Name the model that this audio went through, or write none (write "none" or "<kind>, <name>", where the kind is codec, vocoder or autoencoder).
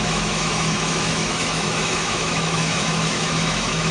autoencoder, DAC-VAE